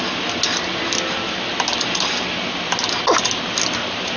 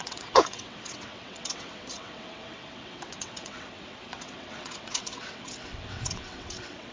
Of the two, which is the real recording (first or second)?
first